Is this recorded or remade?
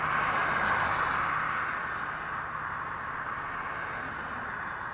recorded